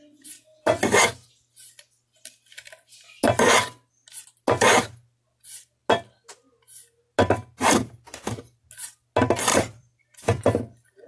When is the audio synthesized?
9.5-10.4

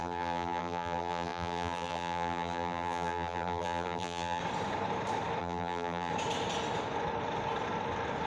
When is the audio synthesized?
0.0-4.4; 5.4-6.1

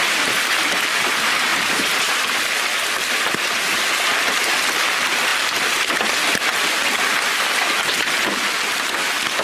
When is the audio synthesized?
1.5-2.5

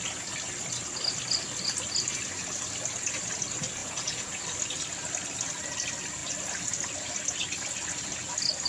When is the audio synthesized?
3.8-4.4

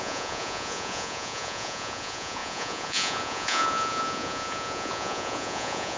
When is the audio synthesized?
0.0-6.0

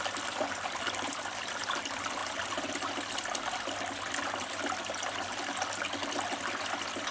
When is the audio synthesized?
none